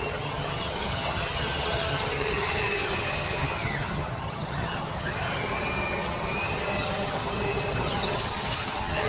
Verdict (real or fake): fake